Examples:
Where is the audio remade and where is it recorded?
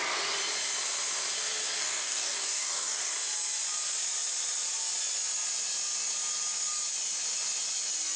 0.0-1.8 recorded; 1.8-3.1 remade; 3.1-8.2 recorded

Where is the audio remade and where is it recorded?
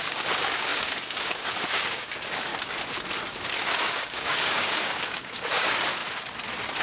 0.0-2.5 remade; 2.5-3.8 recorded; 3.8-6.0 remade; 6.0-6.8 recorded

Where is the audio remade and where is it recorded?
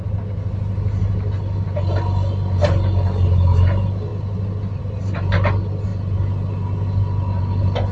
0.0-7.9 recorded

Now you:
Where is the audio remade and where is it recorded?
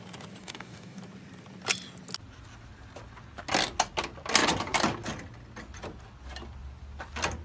0.0-0.4 recorded; 0.4-1.0 remade; 1.0-7.4 recorded